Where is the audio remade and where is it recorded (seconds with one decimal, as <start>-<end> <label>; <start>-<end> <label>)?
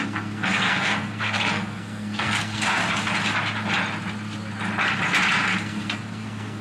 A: 0.0-2.8 remade; 2.8-5.6 recorded; 5.6-6.6 remade